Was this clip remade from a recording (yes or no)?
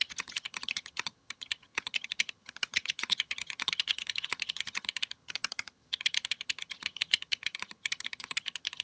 yes